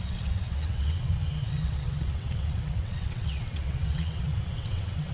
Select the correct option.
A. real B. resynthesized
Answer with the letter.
B